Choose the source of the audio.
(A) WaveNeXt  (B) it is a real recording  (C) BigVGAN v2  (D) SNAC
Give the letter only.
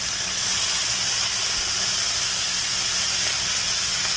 B